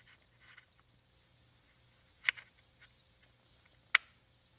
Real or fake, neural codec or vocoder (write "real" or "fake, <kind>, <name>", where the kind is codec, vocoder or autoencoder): real